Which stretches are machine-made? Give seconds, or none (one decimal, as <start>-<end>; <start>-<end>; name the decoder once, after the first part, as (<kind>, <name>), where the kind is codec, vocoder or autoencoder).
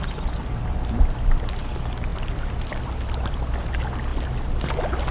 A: none